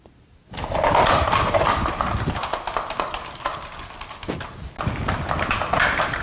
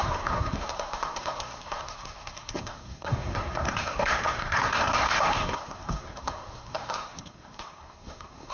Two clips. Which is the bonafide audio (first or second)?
first